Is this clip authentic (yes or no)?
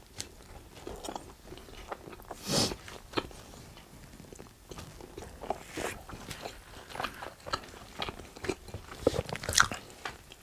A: yes